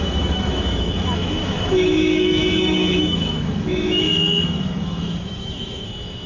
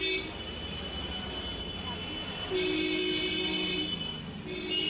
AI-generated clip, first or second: first